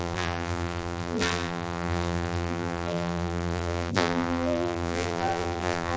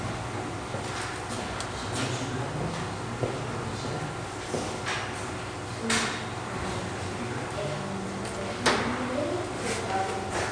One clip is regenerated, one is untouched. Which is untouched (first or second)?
second